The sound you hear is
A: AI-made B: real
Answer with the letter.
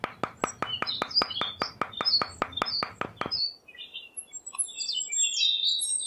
B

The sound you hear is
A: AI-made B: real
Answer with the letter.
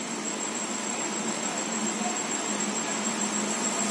B